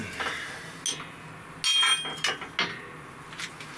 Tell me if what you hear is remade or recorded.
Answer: recorded